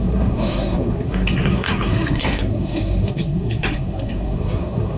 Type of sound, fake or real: fake